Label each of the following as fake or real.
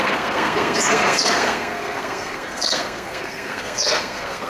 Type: fake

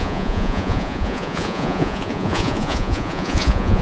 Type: fake